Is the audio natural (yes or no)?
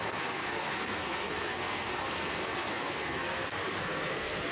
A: no